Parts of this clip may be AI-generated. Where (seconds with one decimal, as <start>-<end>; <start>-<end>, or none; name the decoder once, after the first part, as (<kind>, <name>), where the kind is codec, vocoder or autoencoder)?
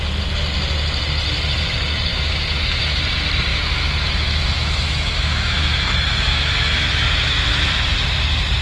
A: 2.1-3.0 (autoencoder, DAC-VAE); 3.5-7.7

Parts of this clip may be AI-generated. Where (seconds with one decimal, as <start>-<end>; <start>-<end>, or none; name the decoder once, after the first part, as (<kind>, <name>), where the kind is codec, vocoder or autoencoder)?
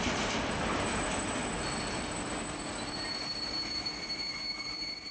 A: 0.0-1.4 (vocoder, BigVGAN v2); 4.0-5.1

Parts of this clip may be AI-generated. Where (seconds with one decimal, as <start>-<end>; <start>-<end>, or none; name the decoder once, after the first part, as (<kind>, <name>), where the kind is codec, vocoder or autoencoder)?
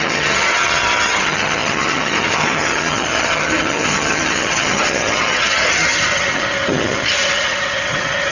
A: 0.0-8.3 (vocoder, HiFi-GAN)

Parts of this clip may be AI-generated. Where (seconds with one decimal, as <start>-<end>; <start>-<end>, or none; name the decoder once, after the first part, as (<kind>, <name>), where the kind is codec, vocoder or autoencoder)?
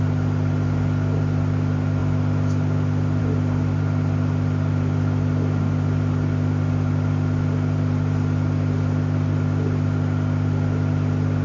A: none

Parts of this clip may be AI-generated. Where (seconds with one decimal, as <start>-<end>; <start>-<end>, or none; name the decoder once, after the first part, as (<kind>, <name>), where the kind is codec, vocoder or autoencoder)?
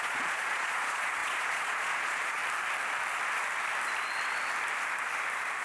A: 0.0-2.4 (vocoder, Vocos)